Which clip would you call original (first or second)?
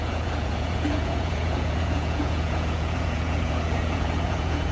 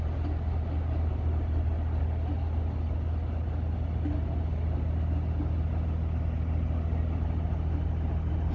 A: second